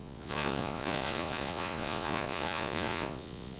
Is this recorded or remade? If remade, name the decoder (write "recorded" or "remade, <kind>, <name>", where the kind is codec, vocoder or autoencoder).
remade, vocoder, Vocos